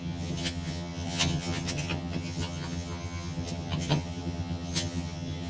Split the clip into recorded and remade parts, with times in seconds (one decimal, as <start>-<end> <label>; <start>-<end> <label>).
0.0-5.5 remade